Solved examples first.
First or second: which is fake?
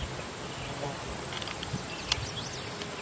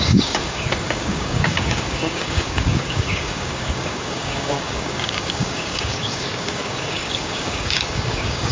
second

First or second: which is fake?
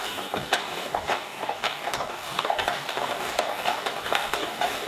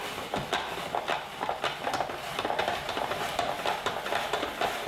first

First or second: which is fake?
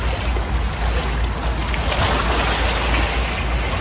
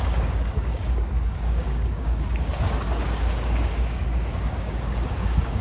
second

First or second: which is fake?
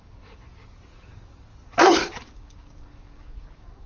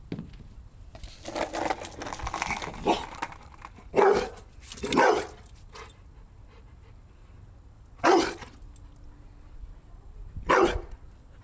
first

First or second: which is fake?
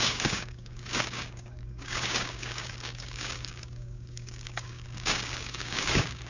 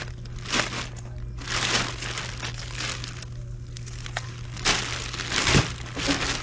first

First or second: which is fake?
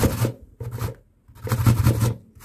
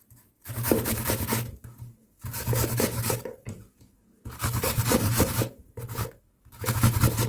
second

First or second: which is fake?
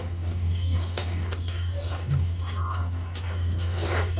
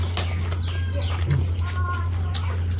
first